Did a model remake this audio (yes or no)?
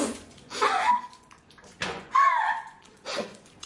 yes